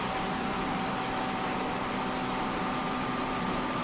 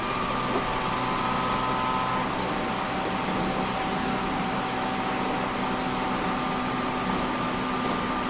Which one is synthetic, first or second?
first